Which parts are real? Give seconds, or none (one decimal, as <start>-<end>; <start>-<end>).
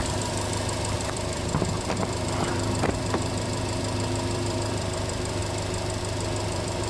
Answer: 5.4-6.0